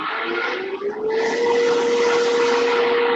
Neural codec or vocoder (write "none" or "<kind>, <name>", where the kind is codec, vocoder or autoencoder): none